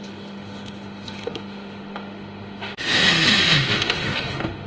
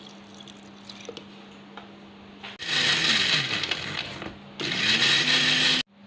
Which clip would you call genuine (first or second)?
second